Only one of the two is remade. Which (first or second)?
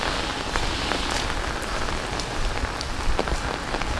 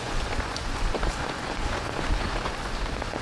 second